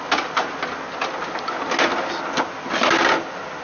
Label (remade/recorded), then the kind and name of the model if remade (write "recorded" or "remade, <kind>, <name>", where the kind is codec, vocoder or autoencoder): recorded